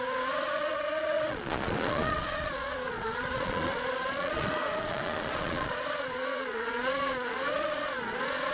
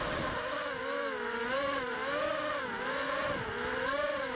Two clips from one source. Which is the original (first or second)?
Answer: second